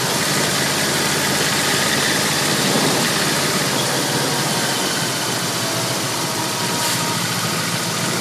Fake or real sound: real